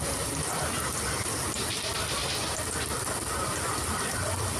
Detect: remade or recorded remade